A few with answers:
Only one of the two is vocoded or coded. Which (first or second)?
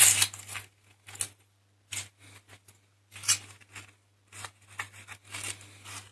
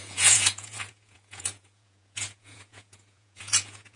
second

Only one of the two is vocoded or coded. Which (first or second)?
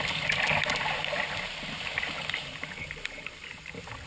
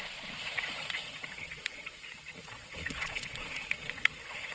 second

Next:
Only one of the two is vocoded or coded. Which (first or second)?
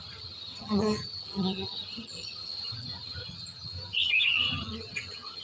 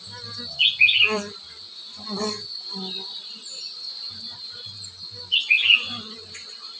first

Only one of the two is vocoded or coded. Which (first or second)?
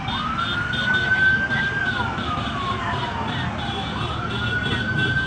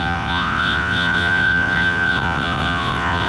second